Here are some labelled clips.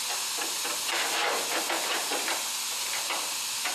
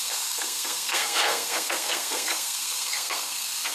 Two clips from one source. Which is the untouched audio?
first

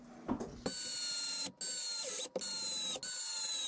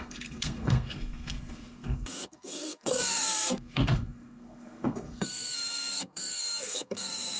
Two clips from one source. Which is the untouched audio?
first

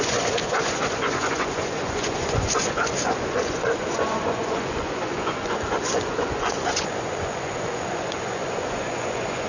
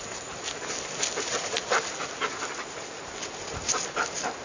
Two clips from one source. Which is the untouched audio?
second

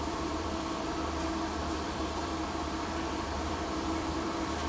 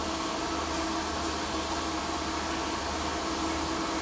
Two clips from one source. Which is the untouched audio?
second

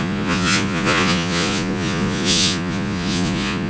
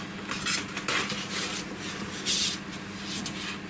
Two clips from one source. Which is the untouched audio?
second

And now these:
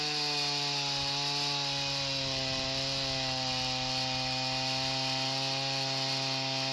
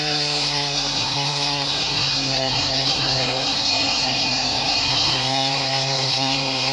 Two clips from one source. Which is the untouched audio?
first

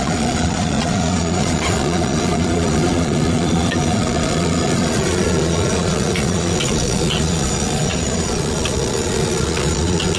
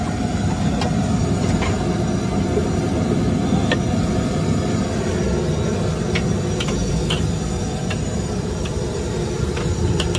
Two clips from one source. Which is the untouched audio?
second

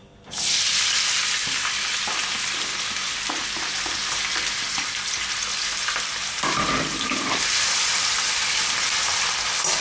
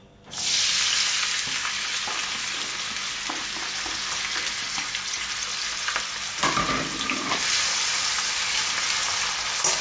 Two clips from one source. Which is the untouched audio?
second